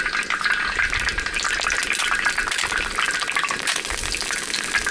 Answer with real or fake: real